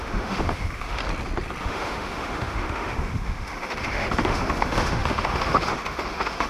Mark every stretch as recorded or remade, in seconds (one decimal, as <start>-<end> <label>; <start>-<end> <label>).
0.0-1.0 remade; 1.0-1.6 recorded; 1.6-6.5 remade